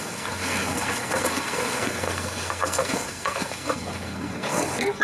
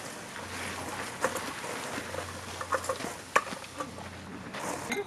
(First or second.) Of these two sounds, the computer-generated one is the first